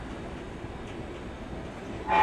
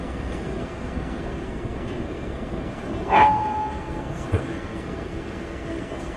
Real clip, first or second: first